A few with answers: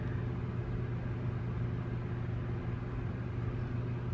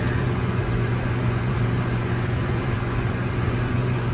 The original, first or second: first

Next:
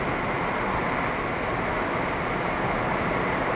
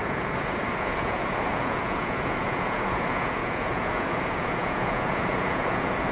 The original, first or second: first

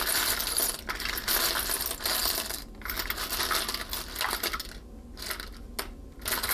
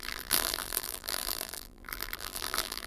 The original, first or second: first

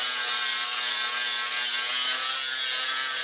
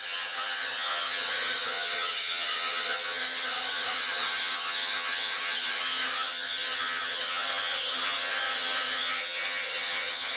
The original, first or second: first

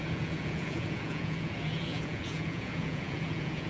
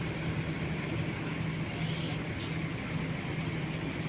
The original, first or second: second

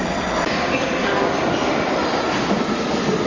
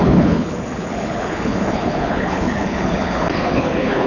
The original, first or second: first